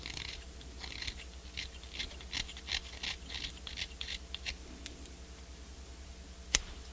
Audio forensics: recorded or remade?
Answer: recorded